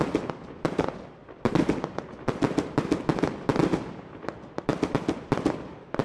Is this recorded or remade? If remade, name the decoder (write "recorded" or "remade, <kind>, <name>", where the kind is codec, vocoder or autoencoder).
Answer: remade, vocoder, BigVGAN v2